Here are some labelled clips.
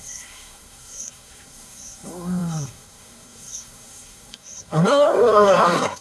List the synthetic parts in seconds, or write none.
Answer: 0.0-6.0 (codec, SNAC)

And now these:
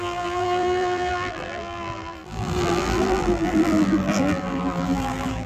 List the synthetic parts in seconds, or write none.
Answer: 0.0-5.5 (vocoder, BigVGAN v2)

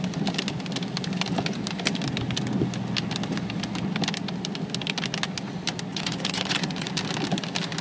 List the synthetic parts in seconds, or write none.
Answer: 5.9-6.9 (vocoder, Vocos)

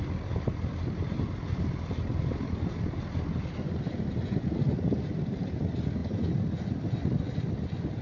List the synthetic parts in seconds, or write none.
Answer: none

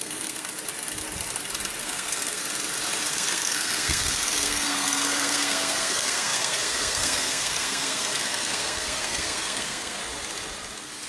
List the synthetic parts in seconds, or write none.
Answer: 0.0-0.5 (codec, SNAC); 1.8-2.4; 3.1-10.0

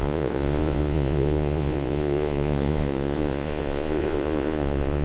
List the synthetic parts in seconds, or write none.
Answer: 0.0-5.0 (vocoder, Vocos)

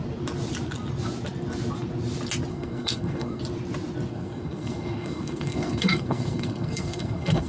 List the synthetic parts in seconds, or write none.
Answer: 2.5-3.4 (codec, SNAC); 4.1-7.5